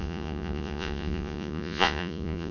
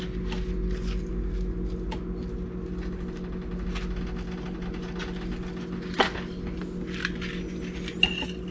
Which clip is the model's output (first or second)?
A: first